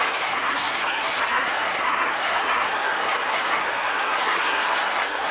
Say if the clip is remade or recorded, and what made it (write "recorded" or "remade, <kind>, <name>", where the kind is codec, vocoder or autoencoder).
remade, codec, SNAC